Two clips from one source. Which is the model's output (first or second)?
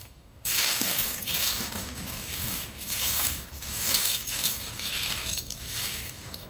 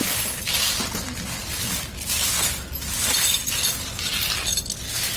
first